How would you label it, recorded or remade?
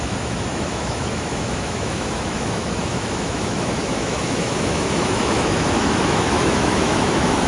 remade